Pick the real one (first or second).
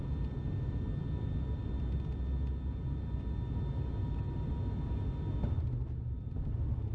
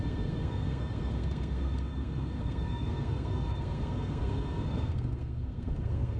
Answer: first